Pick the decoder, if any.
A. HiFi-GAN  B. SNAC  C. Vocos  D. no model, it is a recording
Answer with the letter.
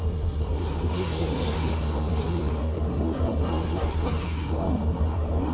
B